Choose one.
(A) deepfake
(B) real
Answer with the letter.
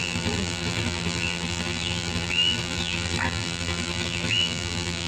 A